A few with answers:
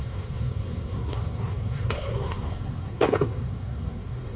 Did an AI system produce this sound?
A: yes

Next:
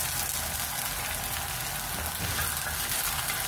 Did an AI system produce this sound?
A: no